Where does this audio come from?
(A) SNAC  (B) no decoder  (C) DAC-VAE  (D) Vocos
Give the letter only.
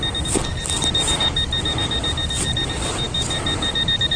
B